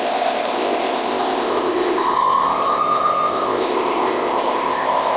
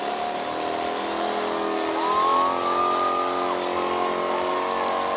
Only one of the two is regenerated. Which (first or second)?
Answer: first